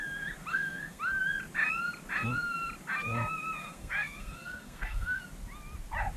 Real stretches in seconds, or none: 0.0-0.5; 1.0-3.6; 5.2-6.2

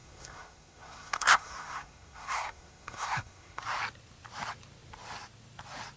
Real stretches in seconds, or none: 3.6-6.0

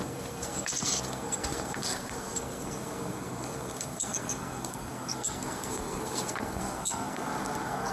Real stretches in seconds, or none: none

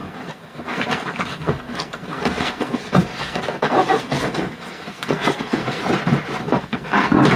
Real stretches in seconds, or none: 5.8-6.4